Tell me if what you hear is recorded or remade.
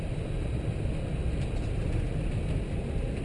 recorded